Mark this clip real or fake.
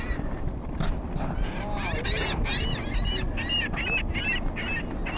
real